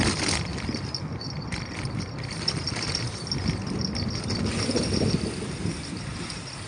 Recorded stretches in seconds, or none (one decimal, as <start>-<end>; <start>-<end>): 0.0-6.7